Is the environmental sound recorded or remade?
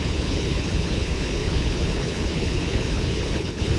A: remade